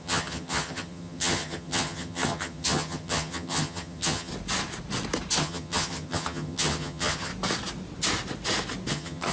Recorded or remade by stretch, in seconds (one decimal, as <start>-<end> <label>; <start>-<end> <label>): 0.0-4.3 remade; 4.3-5.4 recorded; 5.4-7.3 remade; 7.3-8.9 recorded; 8.9-9.3 remade